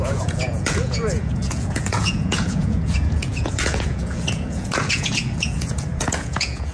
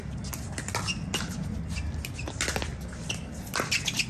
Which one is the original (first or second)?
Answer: second